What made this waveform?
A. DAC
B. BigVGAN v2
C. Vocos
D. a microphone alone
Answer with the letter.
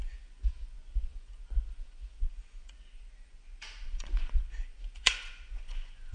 C